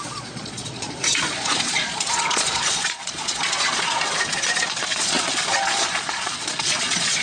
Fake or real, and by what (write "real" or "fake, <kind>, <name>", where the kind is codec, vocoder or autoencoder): fake, vocoder, Vocos